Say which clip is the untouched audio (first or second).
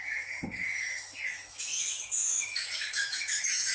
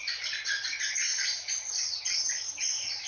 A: second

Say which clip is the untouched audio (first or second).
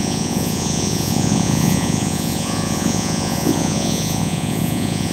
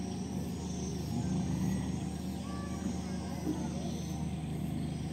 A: second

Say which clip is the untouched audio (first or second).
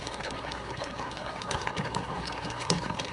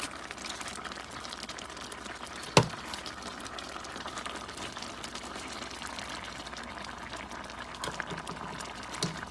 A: second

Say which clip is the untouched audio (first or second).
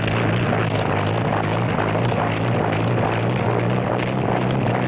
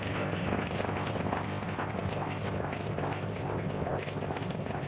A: first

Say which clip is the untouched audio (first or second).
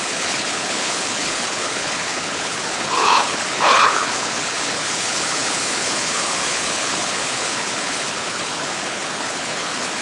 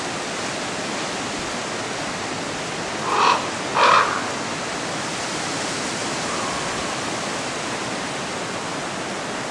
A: second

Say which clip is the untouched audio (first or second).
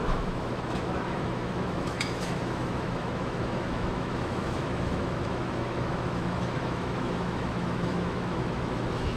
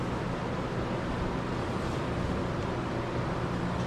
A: second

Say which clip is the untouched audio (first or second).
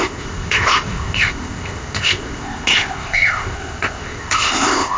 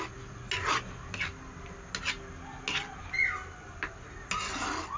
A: second